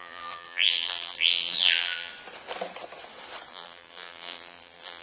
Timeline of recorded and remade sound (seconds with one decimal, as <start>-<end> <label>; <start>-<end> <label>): 0.0-2.1 remade; 2.1-3.5 recorded; 3.5-5.0 remade